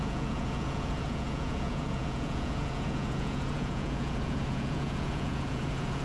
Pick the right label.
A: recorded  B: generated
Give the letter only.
B